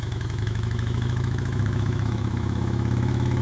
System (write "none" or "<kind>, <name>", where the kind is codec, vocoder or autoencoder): autoencoder, DAC-VAE